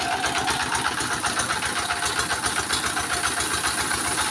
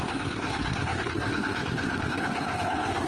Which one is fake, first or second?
second